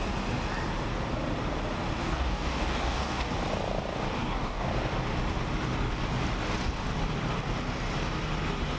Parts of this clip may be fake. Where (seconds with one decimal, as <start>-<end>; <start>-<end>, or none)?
2.0-3.3; 4.2-4.7